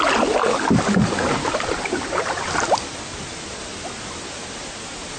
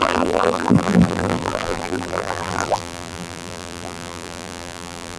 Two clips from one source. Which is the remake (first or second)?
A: second